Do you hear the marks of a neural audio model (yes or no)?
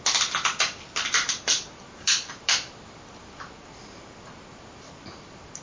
no